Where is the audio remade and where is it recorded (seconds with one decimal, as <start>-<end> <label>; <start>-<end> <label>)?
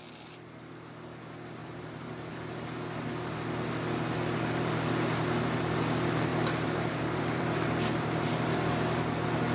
0.0-1.6 recorded; 1.6-2.3 remade; 2.3-6.3 recorded; 6.3-8.7 remade; 8.7-9.5 recorded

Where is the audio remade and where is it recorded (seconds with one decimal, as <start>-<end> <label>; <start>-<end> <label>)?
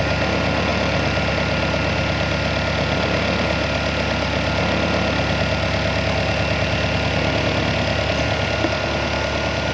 0.0-9.7 recorded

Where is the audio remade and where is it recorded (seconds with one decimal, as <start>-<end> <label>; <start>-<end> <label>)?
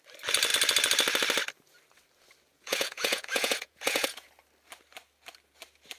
0.0-2.5 recorded; 2.5-4.3 remade; 4.3-6.0 recorded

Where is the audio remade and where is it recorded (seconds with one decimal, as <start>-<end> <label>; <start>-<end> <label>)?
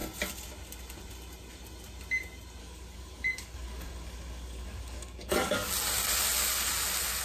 0.0-2.6 recorded; 2.6-5.7 remade; 5.7-7.2 recorded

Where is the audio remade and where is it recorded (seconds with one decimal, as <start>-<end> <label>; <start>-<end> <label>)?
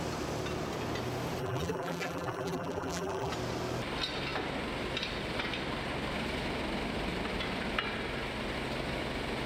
0.0-1.4 recorded; 1.4-3.3 remade; 3.3-9.5 recorded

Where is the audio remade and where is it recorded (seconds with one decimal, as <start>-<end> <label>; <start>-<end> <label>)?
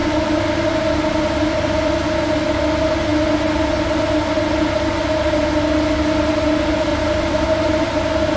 0.0-6.9 recorded; 6.9-7.9 remade; 7.9-8.4 recorded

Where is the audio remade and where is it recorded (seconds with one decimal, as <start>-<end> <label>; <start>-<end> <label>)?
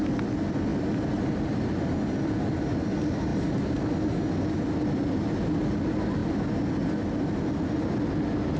0.0-8.6 recorded